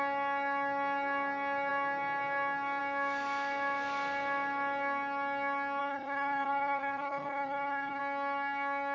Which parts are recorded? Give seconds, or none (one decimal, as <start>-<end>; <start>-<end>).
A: 0.0-5.8; 8.0-8.9